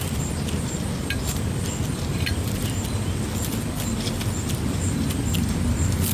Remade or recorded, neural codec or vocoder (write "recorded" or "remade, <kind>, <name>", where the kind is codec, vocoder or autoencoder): recorded